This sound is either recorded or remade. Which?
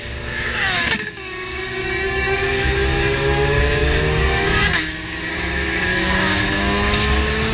remade